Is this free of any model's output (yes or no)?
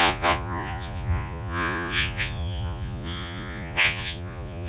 no